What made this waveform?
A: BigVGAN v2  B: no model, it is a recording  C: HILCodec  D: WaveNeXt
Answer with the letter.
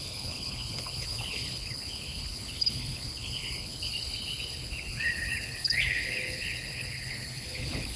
C